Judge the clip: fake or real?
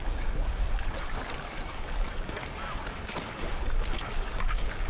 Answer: fake